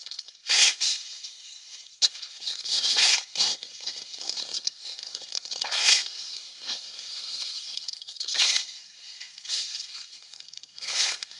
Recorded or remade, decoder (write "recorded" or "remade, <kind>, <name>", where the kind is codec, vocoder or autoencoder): remade, codec, SNAC